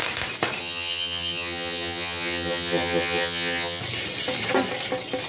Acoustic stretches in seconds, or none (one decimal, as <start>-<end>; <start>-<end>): 0.0-0.6; 3.8-5.3